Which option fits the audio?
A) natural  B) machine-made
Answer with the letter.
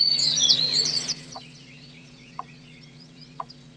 B